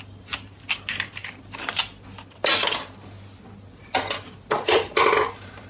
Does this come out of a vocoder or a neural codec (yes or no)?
no